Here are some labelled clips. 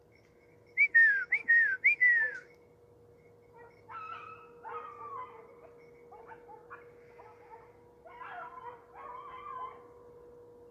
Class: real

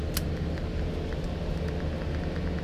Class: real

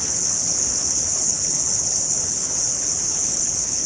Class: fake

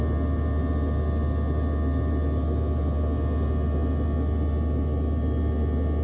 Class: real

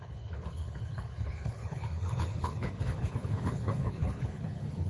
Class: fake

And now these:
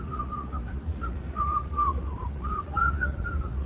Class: fake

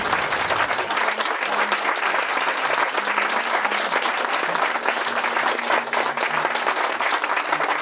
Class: real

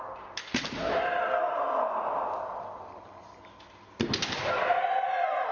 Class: real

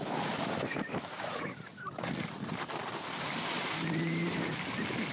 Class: real